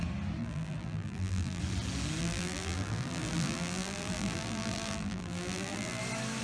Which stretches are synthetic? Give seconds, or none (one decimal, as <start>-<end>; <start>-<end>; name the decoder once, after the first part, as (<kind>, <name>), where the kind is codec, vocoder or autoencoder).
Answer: 0.4-1.6 (vocoder, BigVGAN v2); 2.2-6.0